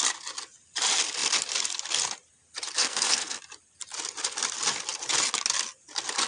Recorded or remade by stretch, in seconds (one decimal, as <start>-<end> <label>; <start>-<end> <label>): 0.0-2.8 recorded; 2.8-3.4 remade; 3.4-6.3 recorded